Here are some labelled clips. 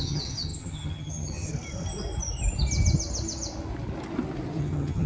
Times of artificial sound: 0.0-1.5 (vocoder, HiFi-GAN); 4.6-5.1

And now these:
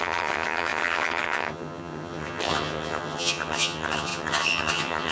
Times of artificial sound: 0.0-5.1 (vocoder, HiFi-GAN)

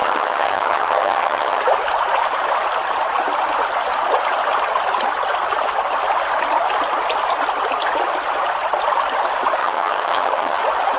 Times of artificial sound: 0.0-1.6 (vocoder, HiFi-GAN); 9.6-10.6